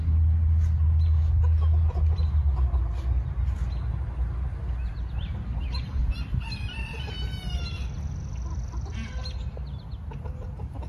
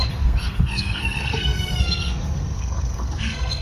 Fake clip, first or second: second